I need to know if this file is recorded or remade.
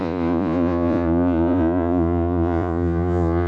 remade